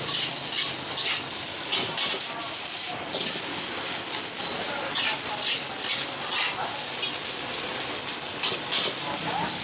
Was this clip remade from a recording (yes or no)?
no